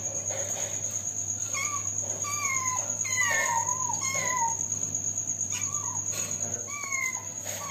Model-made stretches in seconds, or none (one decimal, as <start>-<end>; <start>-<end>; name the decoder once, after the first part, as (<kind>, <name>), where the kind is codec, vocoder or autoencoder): 3.7-7.1 (vocoder, BigVGAN v2)